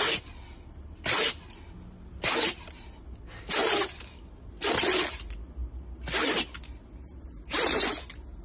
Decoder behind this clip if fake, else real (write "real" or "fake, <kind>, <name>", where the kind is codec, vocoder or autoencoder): real